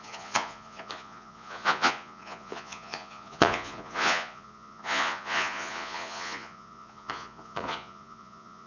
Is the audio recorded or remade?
remade